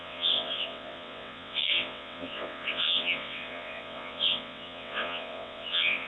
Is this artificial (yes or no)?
yes